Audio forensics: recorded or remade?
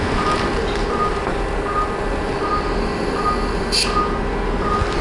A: recorded